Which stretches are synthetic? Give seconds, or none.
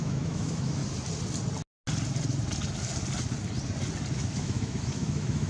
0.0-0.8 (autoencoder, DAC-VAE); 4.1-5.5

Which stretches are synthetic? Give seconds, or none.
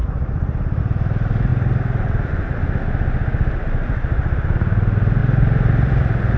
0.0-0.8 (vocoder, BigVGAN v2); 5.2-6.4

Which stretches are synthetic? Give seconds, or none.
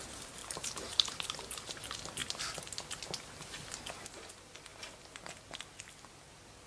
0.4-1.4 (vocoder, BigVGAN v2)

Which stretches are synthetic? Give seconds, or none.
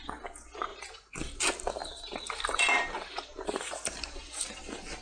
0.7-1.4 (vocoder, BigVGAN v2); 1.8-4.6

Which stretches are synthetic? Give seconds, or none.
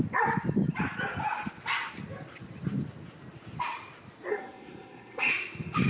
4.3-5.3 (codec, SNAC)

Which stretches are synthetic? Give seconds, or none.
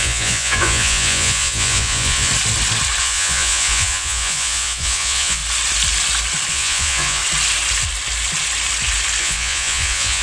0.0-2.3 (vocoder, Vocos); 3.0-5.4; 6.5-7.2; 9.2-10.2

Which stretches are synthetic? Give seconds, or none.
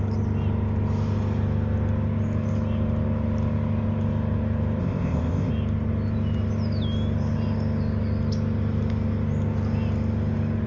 4.8-5.5 (codec, ZipCodec)